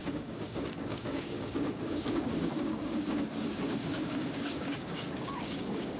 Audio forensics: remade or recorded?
remade